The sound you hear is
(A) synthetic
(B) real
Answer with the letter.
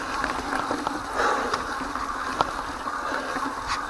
B